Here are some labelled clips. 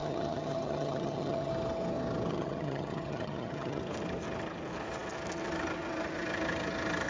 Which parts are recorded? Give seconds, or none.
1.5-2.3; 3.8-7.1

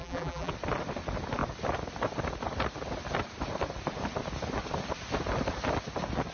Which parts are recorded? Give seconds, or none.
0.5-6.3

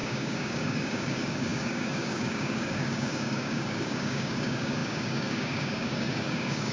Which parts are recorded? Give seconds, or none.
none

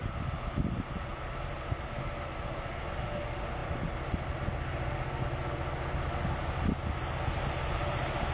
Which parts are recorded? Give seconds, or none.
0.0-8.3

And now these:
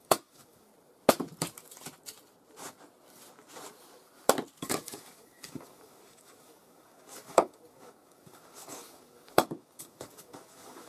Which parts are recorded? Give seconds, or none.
0.7-4.6

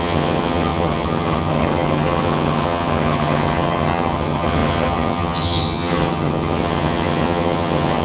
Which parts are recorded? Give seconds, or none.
none

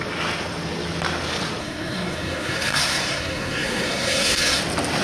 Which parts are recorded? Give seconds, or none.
0.0-1.6; 4.6-5.0